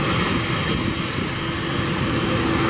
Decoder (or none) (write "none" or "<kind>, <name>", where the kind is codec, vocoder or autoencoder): none